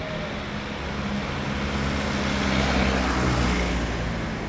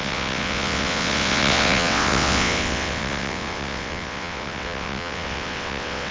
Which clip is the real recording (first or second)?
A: first